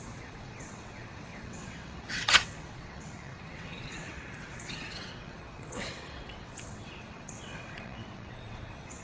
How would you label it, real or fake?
fake